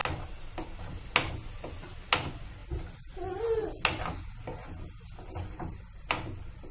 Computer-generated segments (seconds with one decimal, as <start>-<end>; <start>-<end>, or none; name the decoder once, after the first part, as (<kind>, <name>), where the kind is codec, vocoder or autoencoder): none